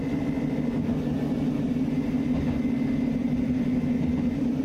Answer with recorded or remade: recorded